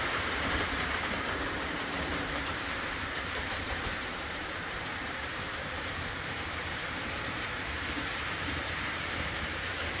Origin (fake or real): fake